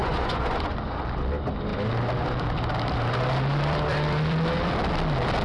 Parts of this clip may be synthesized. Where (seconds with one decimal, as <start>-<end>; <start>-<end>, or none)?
0.0-1.0